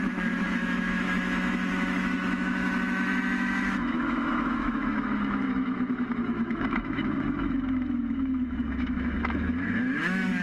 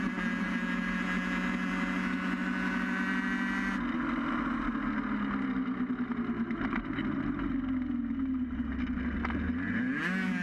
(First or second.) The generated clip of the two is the first